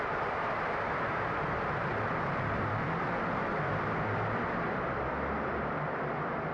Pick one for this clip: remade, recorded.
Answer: remade